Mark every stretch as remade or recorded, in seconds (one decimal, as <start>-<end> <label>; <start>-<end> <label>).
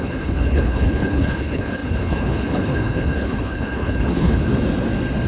0.0-4.5 remade; 4.5-5.3 recorded